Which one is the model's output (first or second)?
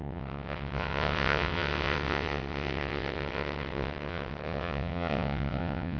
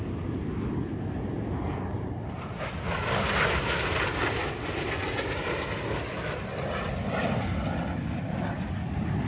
first